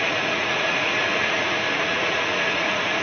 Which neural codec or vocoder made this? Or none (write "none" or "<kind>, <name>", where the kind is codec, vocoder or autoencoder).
vocoder, Vocos